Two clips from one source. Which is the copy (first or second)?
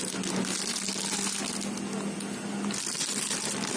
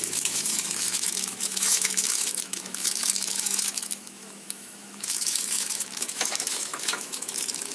second